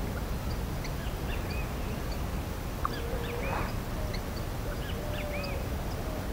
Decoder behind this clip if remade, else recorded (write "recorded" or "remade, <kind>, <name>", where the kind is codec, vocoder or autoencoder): recorded